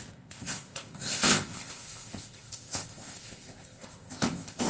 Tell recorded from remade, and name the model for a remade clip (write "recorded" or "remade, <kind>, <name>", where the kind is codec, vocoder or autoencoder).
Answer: remade, codec, ZipCodec